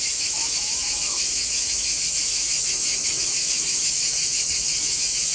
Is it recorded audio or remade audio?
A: remade